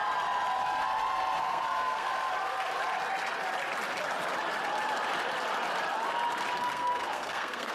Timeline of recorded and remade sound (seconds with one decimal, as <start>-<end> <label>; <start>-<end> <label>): 0.0-1.4 recorded; 1.4-2.1 remade; 2.1-6.7 recorded; 6.7-7.7 remade